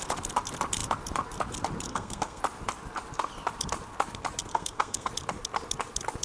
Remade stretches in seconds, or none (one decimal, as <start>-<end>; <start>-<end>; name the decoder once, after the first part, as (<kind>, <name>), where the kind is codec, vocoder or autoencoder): 1.9-2.4 (codec, SNAC); 4.5-5.1